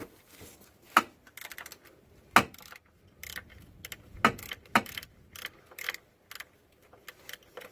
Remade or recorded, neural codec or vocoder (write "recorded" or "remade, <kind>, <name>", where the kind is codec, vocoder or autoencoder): recorded